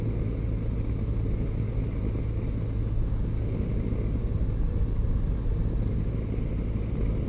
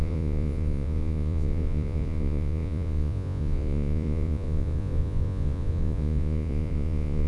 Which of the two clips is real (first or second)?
first